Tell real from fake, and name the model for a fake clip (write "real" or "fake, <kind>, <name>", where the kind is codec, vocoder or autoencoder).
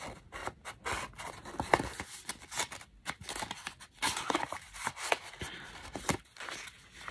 real